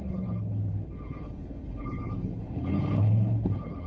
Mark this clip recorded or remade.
remade